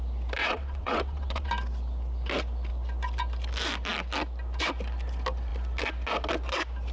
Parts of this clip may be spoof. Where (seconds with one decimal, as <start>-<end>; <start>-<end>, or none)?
0.4-1.5